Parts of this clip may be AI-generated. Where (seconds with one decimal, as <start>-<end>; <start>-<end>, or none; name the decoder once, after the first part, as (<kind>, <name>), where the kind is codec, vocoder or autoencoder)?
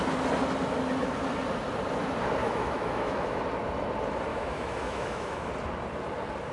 2.4-3.4 (autoencoder, DAC-VAE); 4.3-5.5